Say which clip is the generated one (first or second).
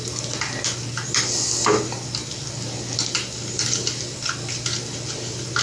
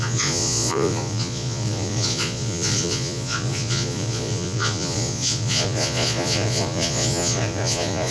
second